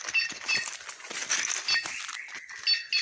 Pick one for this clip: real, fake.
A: real